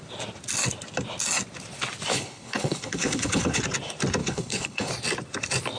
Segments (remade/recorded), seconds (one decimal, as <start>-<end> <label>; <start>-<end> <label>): 0.0-2.1 recorded; 2.1-3.6 remade; 3.6-4.2 recorded; 4.2-4.9 remade; 4.9-5.8 recorded